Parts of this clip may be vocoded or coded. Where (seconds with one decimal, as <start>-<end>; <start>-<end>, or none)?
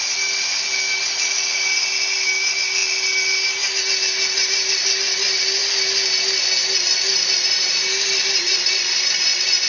none